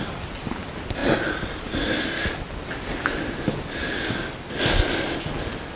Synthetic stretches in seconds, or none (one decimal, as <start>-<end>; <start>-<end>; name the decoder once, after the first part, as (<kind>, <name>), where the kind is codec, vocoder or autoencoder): none